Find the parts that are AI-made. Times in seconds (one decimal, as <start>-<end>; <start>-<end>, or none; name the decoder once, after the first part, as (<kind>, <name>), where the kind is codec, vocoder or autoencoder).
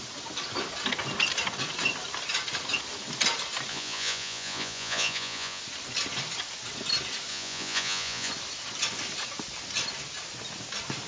3.7-5.6 (vocoder, Vocos); 7.3-8.3